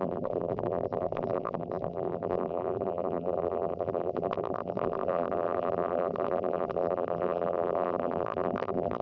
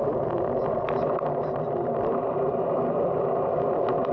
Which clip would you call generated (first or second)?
first